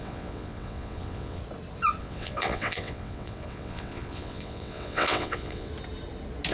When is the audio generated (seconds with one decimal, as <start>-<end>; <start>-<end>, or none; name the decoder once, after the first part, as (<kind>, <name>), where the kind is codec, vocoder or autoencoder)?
0.0-1.4 (vocoder, WaveNeXt); 2.0-5.7